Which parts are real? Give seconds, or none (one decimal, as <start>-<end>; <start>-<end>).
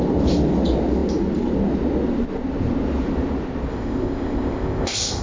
0.0-3.7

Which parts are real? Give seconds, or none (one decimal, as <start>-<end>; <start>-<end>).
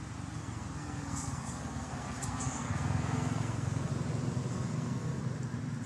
0.0-0.4; 3.9-4.5; 5.2-5.9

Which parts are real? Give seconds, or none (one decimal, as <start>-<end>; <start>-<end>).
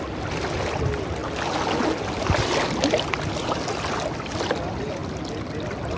0.0-6.0